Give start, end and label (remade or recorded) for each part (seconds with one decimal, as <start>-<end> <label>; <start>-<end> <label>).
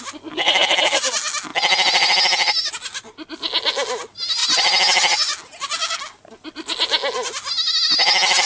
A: 0.0-8.5 recorded